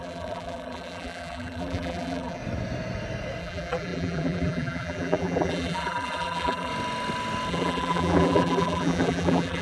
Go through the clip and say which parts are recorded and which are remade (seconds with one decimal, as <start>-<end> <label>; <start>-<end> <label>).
0.0-2.4 remade; 2.4-3.4 recorded; 3.4-6.7 remade; 6.7-7.5 recorded; 7.5-9.6 remade